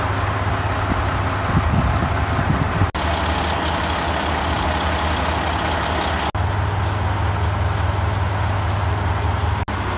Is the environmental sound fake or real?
real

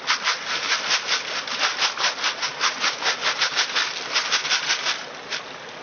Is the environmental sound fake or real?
real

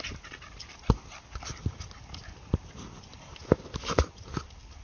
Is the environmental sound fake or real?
real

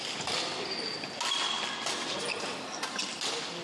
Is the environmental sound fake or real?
real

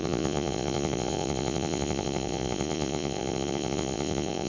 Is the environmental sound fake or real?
fake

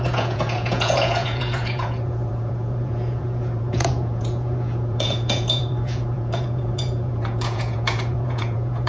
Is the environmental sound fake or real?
fake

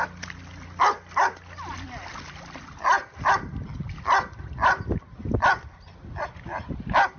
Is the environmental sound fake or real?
real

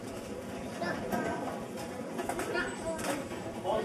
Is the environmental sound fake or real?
real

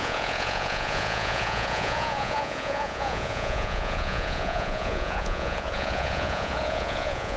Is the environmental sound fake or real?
fake